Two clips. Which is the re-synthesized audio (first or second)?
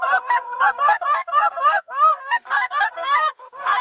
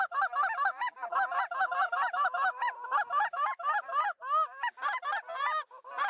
first